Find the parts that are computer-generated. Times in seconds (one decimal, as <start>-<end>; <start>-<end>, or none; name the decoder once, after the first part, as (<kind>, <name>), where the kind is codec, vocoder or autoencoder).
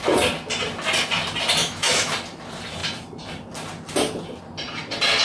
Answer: 1.6-2.1 (autoencoder, DAC-VAE)